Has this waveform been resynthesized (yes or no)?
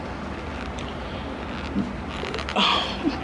no